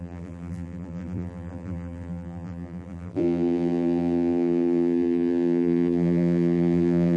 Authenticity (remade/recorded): remade